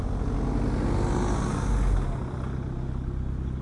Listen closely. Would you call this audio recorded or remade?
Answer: recorded